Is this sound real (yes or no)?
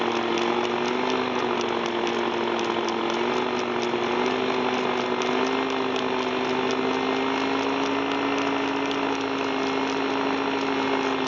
yes